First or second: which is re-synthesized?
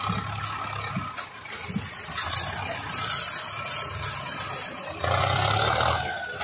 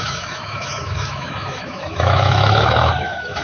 second